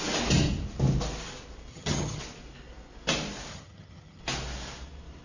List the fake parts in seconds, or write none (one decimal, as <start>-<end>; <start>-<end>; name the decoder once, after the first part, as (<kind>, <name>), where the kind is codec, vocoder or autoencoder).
1.7-2.2 (vocoder, HiFi-GAN); 3.5-4.2